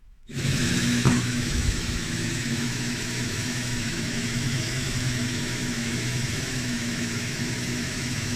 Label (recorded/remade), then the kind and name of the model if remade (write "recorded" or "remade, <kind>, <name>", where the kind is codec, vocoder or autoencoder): remade, autoencoder, DAC-VAE